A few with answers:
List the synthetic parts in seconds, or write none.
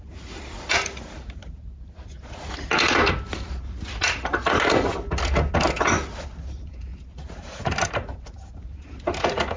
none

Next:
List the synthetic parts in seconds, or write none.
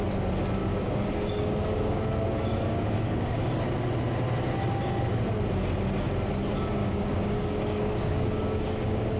0.6-3.5 (codec, DAC); 6.8-9.2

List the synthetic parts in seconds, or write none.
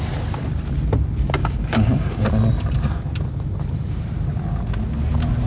1.4-2.3 (codec, DAC)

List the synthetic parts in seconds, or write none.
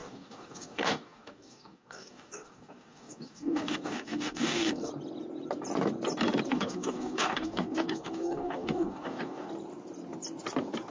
0.0-4.9 (codec, DAC); 6.5-9.5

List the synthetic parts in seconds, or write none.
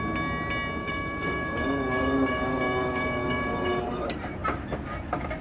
0.8-4.0 (codec, DAC)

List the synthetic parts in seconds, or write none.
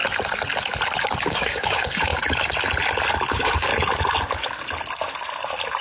1.2-2.1 (codec, DAC); 3.3-3.7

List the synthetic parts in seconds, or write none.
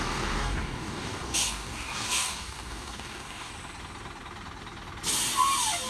0.0-3.5 (codec, DAC)